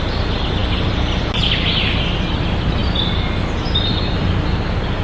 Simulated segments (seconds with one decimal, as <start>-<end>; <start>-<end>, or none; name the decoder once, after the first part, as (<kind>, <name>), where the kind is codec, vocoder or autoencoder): none